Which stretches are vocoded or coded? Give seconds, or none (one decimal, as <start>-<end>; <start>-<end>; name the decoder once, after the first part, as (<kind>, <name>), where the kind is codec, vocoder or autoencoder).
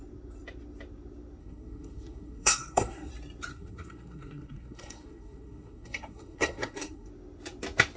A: 1.4-3.1 (codec, SNAC); 3.5-7.1